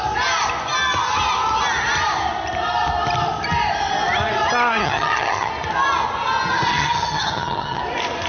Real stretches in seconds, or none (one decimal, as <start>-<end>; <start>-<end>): 0.0-4.8; 5.5-6.7; 7.8-8.3